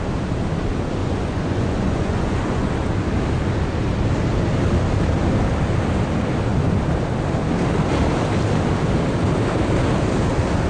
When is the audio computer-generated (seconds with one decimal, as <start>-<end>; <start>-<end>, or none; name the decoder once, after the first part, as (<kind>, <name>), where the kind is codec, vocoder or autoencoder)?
1.0-2.7 (vocoder, Vocos)

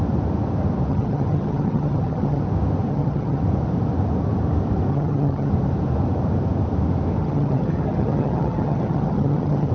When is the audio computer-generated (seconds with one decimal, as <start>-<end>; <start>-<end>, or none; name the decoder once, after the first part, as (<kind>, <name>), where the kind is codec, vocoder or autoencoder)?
0.9-2.4 (vocoder, HiFi-GAN); 2.9-3.4; 4.9-5.5; 7.2-9.7